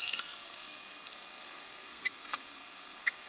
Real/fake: fake